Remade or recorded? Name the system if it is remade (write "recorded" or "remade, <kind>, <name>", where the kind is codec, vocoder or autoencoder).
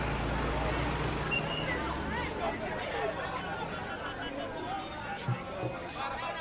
recorded